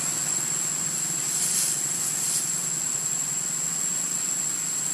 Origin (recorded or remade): recorded